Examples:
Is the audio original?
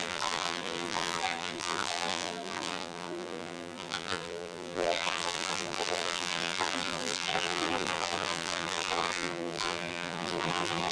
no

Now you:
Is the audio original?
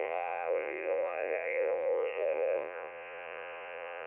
no